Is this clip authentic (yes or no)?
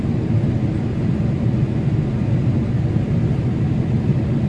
yes